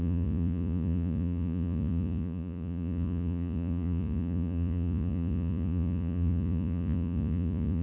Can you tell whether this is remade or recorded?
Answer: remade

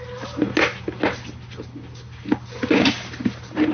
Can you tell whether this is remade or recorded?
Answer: recorded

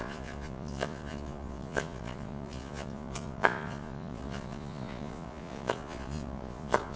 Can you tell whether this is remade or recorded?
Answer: remade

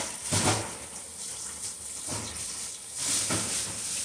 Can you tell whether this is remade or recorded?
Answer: recorded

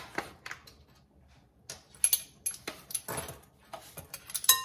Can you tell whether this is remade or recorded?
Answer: recorded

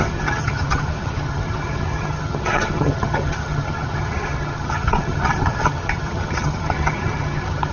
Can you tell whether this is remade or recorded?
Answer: remade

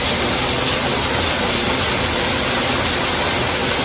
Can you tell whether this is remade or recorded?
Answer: recorded